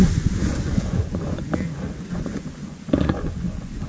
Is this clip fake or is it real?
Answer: fake